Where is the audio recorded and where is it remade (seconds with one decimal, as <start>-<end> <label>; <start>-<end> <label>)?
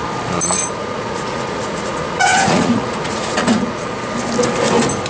0.0-0.8 recorded; 0.8-3.9 remade; 3.9-5.1 recorded